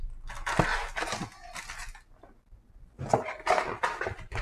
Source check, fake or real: real